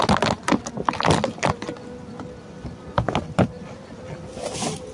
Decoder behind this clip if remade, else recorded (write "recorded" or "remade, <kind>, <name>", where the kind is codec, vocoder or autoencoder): recorded